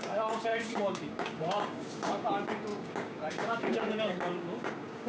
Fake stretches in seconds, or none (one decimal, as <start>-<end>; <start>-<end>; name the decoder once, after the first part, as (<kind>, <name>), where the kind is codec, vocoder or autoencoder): 0.0-5.1 (codec, DAC)